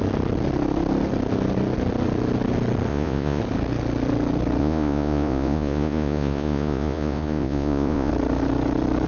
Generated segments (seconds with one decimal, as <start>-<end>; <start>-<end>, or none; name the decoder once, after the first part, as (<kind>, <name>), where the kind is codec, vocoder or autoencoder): 2.9-3.4 (vocoder, Vocos); 4.6-8.1